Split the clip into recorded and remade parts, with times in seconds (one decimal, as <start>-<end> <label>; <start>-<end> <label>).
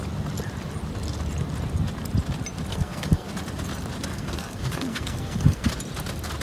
0.0-2.7 recorded; 2.7-3.3 remade; 3.3-4.1 recorded; 4.1-5.7 remade; 5.7-6.4 recorded